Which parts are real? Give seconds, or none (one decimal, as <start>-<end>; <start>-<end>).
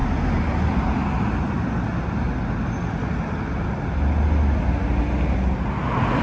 0.0-6.2